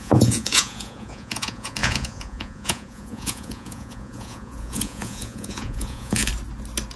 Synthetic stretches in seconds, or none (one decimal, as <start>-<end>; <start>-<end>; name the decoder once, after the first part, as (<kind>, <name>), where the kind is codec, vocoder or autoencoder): 0.0-6.3 (vocoder, Vocos)